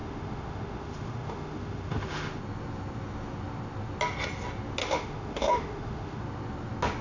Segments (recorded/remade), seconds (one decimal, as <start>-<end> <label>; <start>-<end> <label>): 0.0-2.4 remade; 2.4-4.8 recorded; 4.8-6.2 remade; 6.2-7.0 recorded